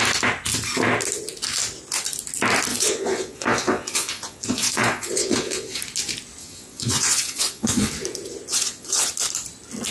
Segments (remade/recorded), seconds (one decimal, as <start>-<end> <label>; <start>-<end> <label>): 0.0-2.7 recorded; 2.7-5.8 remade; 5.8-6.4 recorded; 6.4-7.9 remade; 7.9-8.5 recorded; 8.5-9.1 remade; 9.1-9.9 recorded